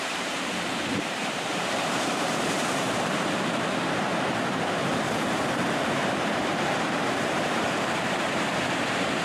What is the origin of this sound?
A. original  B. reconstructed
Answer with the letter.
B